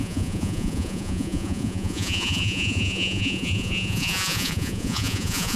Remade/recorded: remade